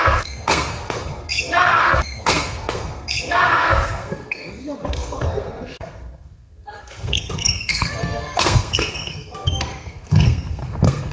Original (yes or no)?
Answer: no